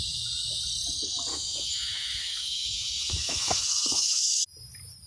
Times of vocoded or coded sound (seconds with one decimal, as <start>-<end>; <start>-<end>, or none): 1.3-4.4